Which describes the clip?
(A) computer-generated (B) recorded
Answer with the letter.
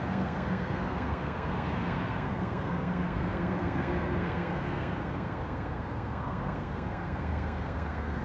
A